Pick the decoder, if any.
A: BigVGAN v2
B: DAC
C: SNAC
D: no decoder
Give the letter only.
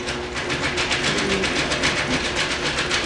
D